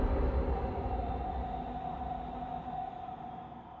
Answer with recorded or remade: recorded